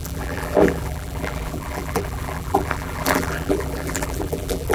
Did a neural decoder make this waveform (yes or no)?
yes